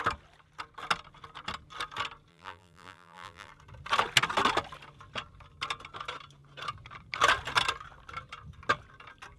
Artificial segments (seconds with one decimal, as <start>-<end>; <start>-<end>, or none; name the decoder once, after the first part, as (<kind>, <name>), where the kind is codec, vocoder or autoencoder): 2.3-3.5 (vocoder, BigVGAN v2)